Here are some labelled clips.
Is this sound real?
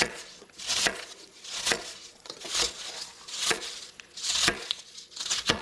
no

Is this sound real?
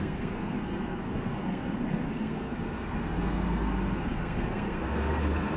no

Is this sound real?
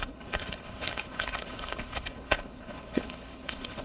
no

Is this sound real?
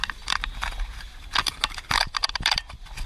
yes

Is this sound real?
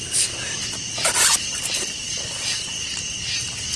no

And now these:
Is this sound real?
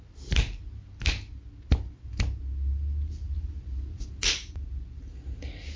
yes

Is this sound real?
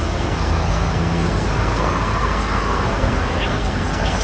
no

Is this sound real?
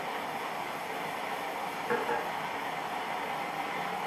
no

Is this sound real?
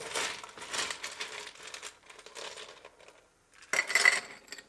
yes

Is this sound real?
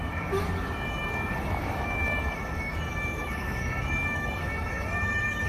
no